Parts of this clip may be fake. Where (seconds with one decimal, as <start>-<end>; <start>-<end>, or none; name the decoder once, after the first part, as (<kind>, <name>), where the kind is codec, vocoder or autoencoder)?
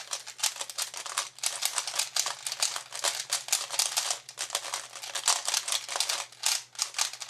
none